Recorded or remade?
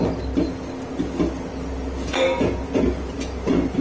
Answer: recorded